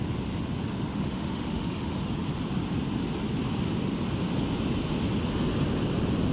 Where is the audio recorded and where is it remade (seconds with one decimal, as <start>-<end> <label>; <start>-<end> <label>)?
0.0-0.9 recorded; 0.9-2.1 remade; 2.1-6.3 recorded